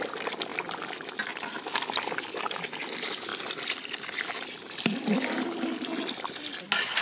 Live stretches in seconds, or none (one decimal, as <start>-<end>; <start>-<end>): 0.0-0.5; 1.2-7.0